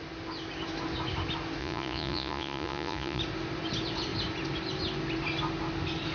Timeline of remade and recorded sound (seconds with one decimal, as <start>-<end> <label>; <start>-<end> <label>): 0.0-1.6 recorded; 1.6-3.2 remade; 3.2-6.1 recorded

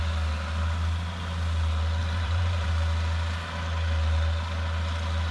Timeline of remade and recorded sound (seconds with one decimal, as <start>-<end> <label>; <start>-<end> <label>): 0.0-2.0 recorded; 2.0-2.7 remade; 2.7-5.3 recorded

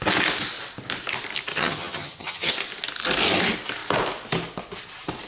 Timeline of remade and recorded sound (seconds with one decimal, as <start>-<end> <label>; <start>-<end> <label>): 0.0-1.5 recorded; 1.5-2.5 remade; 2.5-5.3 recorded

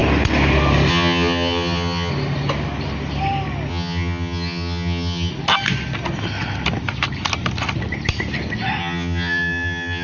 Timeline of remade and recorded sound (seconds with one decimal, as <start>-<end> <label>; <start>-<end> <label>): 0.0-0.9 recorded; 0.9-2.1 remade; 2.1-3.7 recorded; 3.7-5.3 remade; 5.3-8.8 recorded; 8.8-10.0 remade

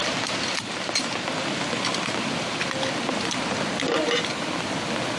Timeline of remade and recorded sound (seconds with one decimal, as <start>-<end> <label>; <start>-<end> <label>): 0.0-5.2 recorded